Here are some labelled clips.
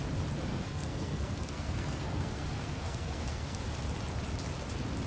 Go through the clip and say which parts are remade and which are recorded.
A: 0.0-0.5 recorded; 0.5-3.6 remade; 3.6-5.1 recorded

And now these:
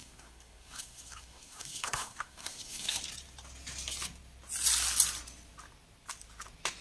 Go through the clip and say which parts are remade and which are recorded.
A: 0.0-3.0 remade; 3.0-6.8 recorded

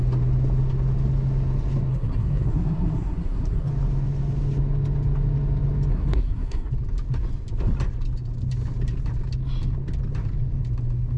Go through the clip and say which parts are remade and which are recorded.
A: 0.0-1.9 recorded; 1.9-3.7 remade; 3.7-5.9 recorded; 5.9-6.7 remade; 6.7-11.2 recorded

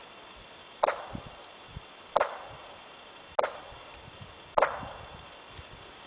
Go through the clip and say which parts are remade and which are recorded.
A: 0.0-6.1 recorded